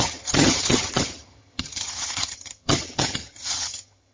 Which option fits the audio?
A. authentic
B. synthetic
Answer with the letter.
B